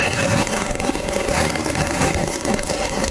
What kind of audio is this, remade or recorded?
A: remade